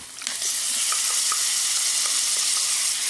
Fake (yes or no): no